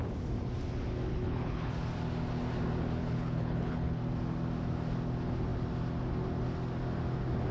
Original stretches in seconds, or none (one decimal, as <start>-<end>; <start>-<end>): 0.0-1.1; 1.7-3.0; 4.0-7.5